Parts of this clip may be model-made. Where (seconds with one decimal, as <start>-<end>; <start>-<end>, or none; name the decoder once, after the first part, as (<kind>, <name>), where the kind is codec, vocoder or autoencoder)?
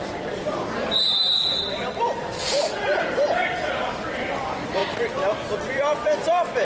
0.0-4.8 (vocoder, BigVGAN v2); 5.7-6.6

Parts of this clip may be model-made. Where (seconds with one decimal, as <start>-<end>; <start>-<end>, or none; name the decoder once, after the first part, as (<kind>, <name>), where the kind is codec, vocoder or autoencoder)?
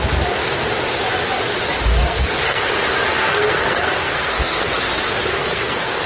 2.0-2.7 (codec, SNAC); 3.2-4.7; 5.4-6.1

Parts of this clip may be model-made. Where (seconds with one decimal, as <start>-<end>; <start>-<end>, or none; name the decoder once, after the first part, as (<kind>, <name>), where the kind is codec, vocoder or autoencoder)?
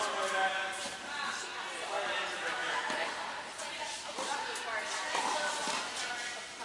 0.6-1.4 (vocoder, BigVGAN v2)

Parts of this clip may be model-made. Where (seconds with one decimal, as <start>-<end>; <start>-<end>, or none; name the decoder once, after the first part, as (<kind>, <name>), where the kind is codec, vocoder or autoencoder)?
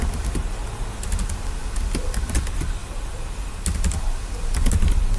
2.8-3.5 (vocoder, BigVGAN v2)